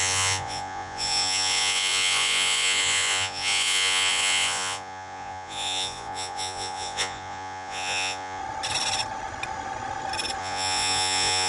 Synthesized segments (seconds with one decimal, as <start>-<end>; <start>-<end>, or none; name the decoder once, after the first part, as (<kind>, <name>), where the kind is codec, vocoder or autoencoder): 0.0-8.4 (vocoder, Vocos); 10.4-11.5